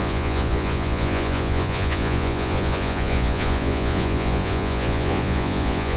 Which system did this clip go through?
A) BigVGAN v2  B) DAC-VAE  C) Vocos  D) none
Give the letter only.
C